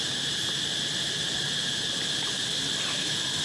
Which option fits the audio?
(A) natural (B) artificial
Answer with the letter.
A